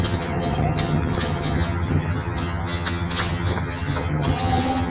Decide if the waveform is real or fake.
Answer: fake